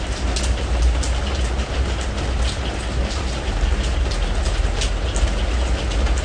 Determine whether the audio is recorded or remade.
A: recorded